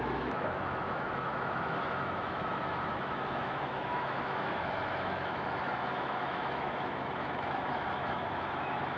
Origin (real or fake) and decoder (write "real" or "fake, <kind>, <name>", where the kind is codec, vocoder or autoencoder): fake, autoencoder, DAC-VAE